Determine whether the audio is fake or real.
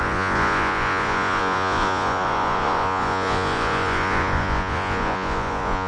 fake